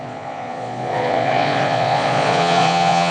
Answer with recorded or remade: remade